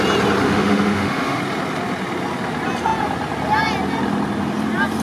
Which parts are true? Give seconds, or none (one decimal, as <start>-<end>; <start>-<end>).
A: 0.0-0.4; 1.4-5.0